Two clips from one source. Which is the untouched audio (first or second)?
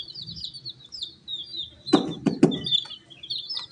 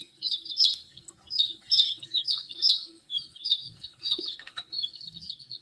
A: first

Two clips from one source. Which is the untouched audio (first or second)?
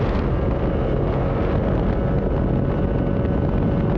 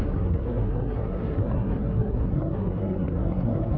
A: first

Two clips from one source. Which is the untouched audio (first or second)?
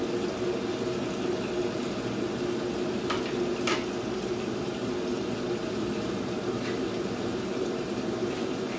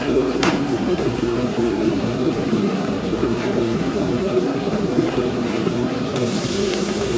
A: first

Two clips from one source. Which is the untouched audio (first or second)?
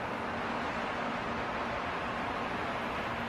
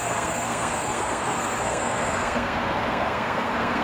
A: first